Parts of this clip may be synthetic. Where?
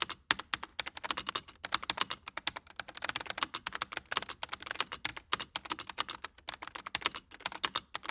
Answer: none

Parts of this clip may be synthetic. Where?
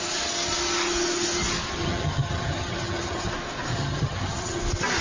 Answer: 1.8-3.3; 3.7-4.6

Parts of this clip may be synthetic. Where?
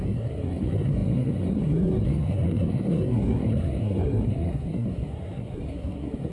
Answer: 0.0-6.3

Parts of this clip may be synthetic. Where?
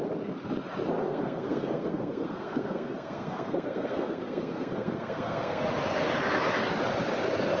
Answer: 1.0-5.6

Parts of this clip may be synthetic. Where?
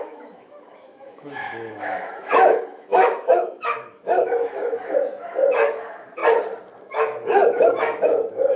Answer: 0.0-6.2; 6.8-8.6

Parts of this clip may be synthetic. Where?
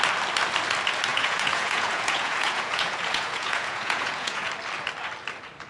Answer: 1.1-4.5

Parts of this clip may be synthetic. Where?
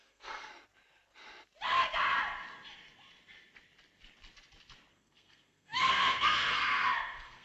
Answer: 0.0-0.5; 4.9-7.4